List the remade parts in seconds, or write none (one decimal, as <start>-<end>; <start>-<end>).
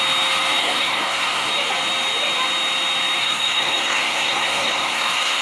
0.6-1.5; 3.2-5.4